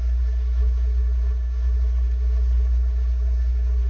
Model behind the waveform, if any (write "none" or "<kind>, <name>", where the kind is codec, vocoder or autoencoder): codec, SNAC